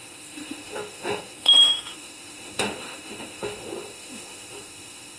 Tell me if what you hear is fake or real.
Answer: fake